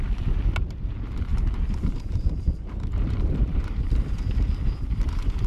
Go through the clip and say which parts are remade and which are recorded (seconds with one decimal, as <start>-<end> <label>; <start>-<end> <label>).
0.0-1.3 recorded; 1.3-4.6 remade; 4.6-5.5 recorded